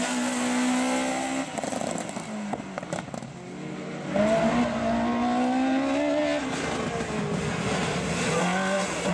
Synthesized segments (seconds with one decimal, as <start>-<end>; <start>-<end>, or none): none

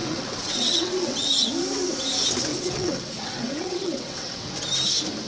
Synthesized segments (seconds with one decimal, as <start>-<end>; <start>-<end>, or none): 0.0-1.3; 2.5-4.5

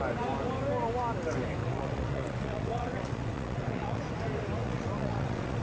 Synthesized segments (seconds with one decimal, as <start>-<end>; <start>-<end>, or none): 1.6-4.0; 4.6-5.6

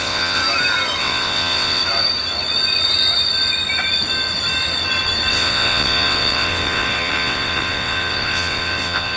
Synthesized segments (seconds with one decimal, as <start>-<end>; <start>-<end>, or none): 0.0-0.4; 1.0-1.8; 5.3-9.2

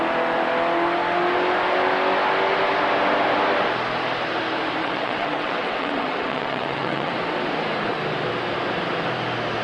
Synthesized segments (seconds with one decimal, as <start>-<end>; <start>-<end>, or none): 4.8-7.1

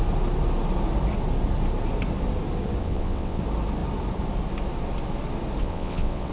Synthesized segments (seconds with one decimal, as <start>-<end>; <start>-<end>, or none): 2.8-3.4; 5.6-6.3